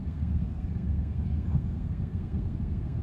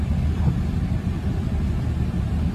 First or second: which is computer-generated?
first